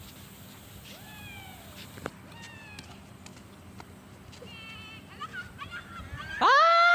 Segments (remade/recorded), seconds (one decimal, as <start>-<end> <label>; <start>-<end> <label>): 0.0-6.9 recorded